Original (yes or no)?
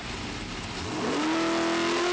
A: yes